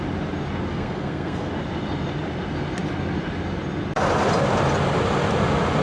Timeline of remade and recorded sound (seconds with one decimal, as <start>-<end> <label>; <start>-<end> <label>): 0.0-0.7 recorded; 0.7-1.5 remade; 1.5-5.8 recorded